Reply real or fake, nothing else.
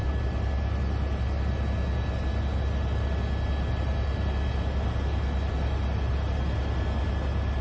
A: real